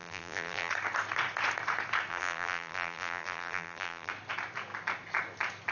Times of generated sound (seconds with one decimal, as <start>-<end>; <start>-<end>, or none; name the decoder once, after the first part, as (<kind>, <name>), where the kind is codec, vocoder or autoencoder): 0.0-0.7 (vocoder, BigVGAN v2); 2.1-4.1

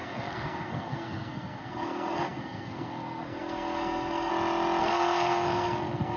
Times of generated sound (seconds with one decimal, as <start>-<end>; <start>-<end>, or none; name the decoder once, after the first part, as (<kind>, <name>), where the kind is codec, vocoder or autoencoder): 0.0-4.3 (codec, SNAC); 4.8-6.2

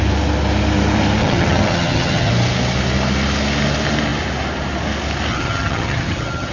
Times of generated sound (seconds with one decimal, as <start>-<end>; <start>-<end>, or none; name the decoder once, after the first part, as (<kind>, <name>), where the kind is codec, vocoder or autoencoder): 1.2-2.3 (vocoder, HiFi-GAN); 5.3-6.5